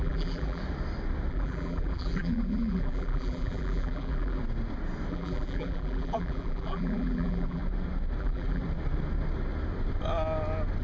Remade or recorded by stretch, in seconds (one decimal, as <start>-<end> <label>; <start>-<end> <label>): 0.0-0.6 remade; 0.6-1.3 recorded; 1.3-4.4 remade; 4.4-5.1 recorded; 5.1-7.6 remade; 7.6-8.2 recorded; 8.2-8.6 remade; 8.6-10.8 recorded